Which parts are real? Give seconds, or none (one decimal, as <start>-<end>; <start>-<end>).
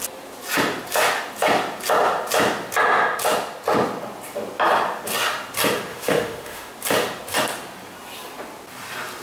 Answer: 0.0-5.9; 6.7-9.2